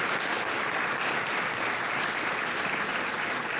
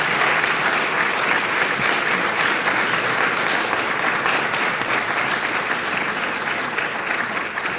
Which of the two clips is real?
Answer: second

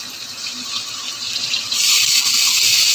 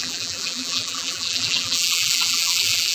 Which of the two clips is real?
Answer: first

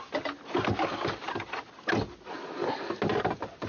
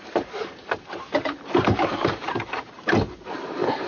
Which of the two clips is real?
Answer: first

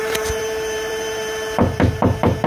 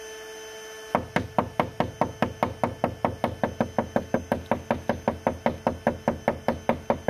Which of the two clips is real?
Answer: second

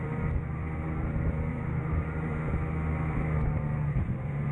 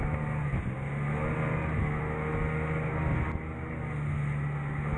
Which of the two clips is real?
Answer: second